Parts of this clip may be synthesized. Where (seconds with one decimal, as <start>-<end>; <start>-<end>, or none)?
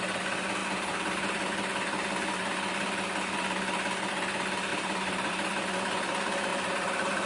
4.7-5.3; 6.5-7.3